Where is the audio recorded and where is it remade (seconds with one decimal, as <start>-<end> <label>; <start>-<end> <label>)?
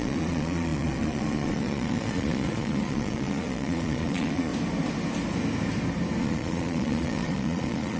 0.0-4.5 remade; 4.5-6.2 recorded; 6.2-8.0 remade